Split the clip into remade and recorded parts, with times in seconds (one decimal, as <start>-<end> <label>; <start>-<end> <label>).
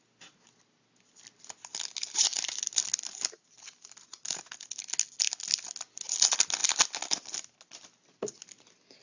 0.0-9.0 recorded